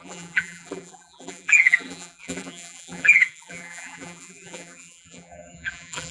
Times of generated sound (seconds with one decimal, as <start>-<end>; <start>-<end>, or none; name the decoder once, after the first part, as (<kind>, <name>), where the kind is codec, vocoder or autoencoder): 0.0-6.1 (vocoder, BigVGAN v2)